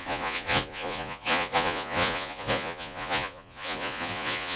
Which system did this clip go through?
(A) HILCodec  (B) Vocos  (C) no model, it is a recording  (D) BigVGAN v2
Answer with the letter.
B